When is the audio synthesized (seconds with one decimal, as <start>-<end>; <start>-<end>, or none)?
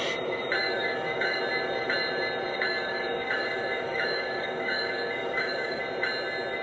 0.6-1.4; 2.5-5.8